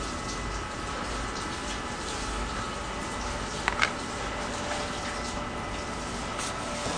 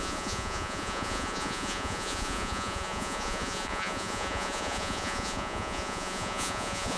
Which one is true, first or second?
first